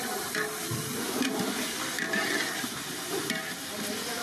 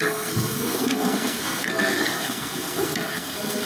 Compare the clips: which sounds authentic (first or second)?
first